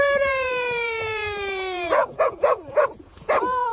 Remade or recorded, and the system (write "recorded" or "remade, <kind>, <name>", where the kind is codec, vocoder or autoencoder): remade, vocoder, Vocos